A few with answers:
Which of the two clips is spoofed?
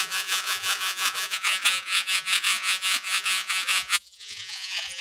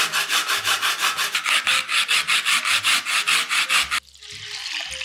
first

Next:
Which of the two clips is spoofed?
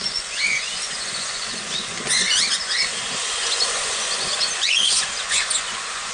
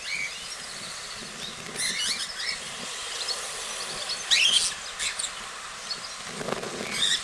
first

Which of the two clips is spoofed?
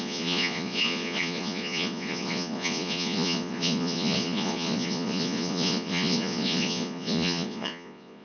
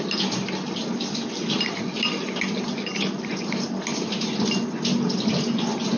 first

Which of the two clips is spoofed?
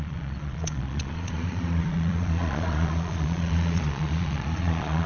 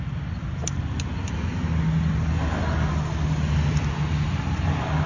first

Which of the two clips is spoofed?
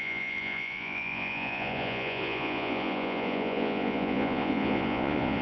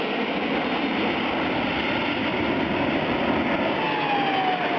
first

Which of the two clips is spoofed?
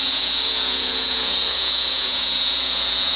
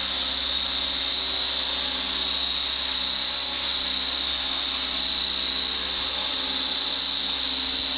first